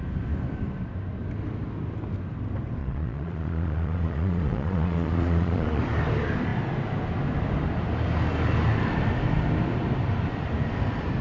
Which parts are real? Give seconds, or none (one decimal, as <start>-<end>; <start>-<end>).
0.0-2.8; 5.8-11.2